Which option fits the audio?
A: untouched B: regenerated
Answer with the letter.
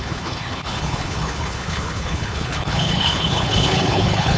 B